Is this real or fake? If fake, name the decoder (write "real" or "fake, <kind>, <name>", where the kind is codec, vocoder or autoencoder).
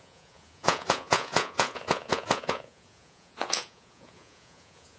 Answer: fake, vocoder, Vocos